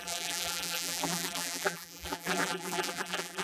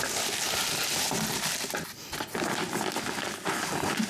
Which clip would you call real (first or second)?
second